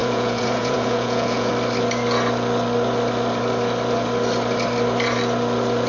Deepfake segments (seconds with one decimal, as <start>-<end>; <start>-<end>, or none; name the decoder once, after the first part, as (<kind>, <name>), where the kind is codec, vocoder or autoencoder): 0.0-1.5 (vocoder, Vocos)